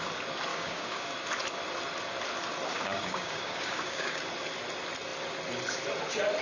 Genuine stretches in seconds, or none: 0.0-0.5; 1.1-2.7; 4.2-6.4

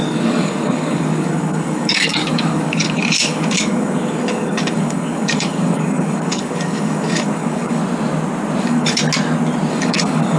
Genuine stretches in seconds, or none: 7.8-8.6; 9.0-9.7

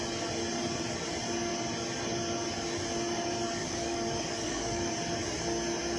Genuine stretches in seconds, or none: 0.0-3.6; 4.9-6.0

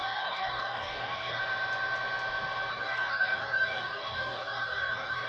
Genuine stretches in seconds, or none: 1.4-2.7

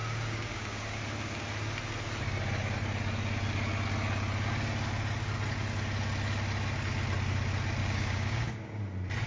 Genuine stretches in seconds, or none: 1.0-7.8; 8.8-9.3

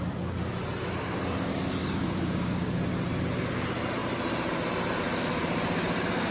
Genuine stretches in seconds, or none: 0.0-1.8; 2.8-6.3

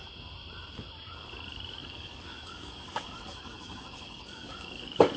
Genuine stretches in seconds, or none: 0.0-1.8

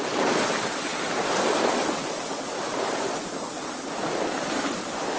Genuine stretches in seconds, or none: 0.0-5.2